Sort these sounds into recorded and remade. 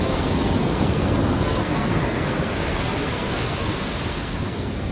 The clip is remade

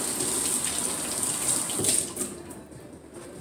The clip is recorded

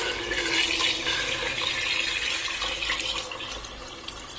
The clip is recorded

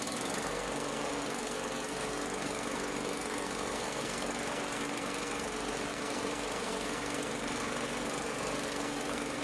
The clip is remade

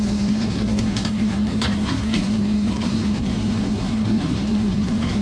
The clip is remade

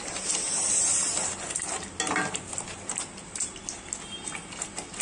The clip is recorded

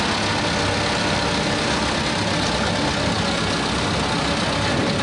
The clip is recorded